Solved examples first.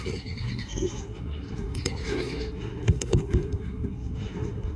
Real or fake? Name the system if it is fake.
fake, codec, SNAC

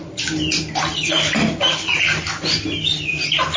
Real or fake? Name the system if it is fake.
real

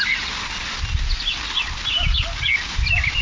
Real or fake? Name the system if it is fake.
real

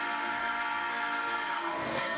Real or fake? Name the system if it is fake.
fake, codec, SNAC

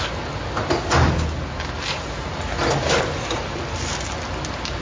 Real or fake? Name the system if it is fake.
real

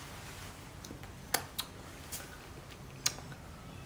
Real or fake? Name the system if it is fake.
real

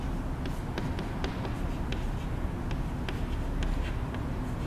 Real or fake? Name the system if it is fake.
real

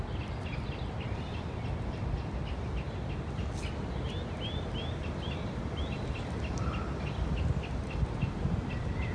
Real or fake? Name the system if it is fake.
real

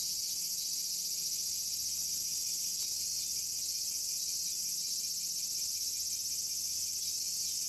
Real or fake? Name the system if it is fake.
real